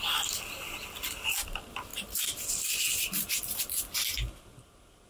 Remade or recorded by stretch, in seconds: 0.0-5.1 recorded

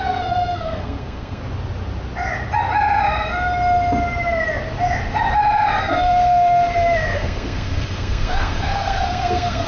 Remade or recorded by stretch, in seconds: 0.0-1.4 remade; 1.4-5.8 recorded; 5.8-9.7 remade

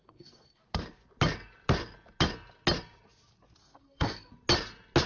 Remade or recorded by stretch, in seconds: 0.0-0.6 remade; 0.6-3.6 recorded; 3.6-4.3 remade; 4.3-5.1 recorded